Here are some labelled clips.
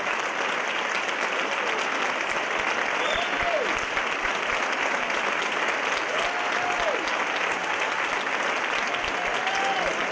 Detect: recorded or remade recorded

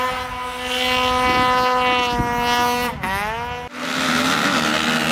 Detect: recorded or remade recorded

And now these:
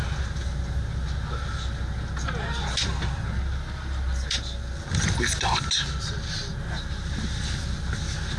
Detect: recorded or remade recorded